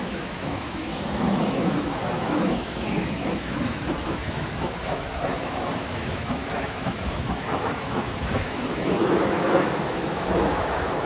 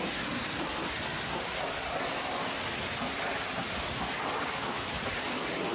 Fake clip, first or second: first